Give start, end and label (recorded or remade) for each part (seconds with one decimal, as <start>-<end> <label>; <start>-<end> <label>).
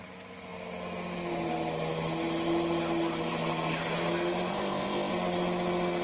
0.0-4.5 recorded; 4.5-5.1 remade; 5.1-6.0 recorded